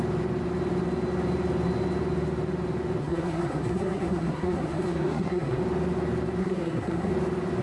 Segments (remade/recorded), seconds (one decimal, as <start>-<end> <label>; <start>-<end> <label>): 0.0-3.0 recorded; 3.0-5.6 remade; 5.6-6.4 recorded; 6.4-7.1 remade; 7.1-7.6 recorded